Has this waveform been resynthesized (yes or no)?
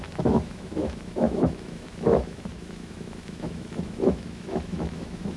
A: yes